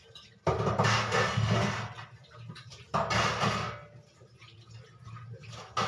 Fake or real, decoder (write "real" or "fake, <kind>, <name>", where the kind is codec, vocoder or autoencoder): real